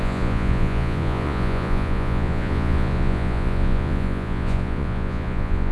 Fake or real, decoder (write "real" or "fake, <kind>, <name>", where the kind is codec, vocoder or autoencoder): fake, vocoder, Vocos